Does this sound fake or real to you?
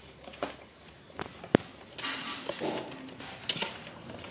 real